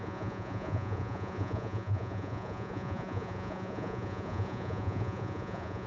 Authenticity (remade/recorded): remade